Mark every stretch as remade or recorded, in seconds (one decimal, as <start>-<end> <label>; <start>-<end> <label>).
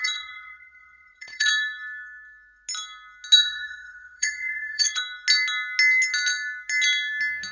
0.0-1.5 remade; 1.5-3.4 recorded; 3.4-5.0 remade; 5.0-7.5 recorded